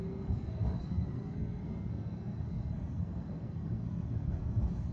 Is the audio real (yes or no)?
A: no